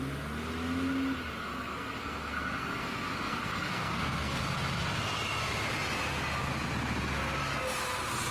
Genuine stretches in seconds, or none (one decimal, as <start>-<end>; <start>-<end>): 0.0-1.4; 4.4-8.3